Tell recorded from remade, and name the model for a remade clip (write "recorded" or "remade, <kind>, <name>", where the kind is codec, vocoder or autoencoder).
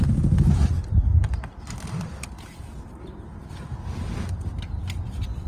recorded